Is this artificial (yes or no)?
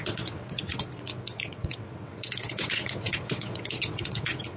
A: yes